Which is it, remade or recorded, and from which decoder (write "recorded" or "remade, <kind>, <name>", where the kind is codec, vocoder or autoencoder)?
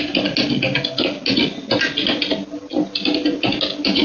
recorded